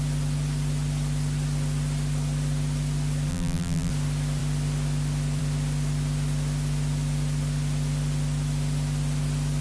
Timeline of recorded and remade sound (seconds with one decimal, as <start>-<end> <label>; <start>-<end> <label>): 0.0-3.3 recorded; 3.3-3.9 remade; 3.9-9.6 recorded